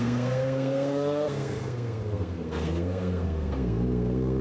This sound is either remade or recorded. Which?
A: remade